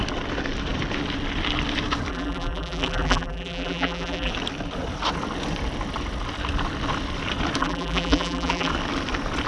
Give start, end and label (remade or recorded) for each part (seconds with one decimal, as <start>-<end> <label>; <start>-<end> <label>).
0.0-2.1 recorded; 2.1-4.3 remade; 4.3-7.6 recorded; 7.6-8.7 remade; 8.7-9.5 recorded